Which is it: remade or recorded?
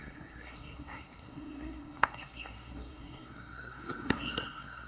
remade